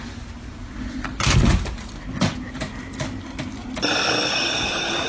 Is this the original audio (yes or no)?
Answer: yes